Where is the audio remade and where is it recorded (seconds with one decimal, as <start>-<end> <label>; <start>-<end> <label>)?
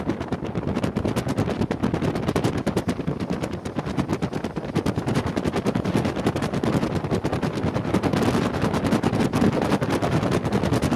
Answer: 0.0-11.0 recorded